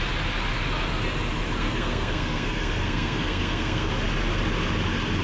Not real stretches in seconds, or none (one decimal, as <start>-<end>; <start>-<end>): 1.6-3.9